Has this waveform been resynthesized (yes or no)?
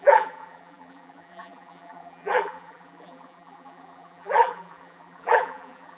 yes